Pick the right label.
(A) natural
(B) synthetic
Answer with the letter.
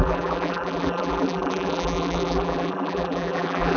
B